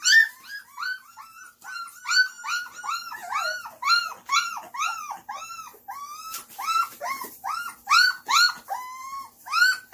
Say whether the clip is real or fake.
real